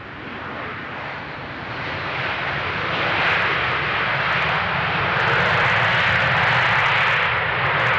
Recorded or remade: recorded